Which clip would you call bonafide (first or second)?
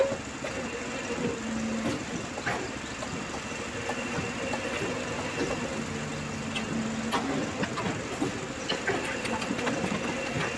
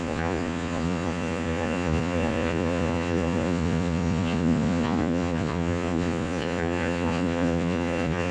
first